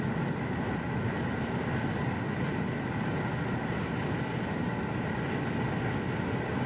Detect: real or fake real